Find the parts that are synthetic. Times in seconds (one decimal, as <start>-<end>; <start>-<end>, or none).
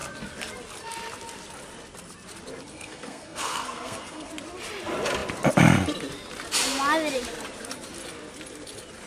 2.7-4.3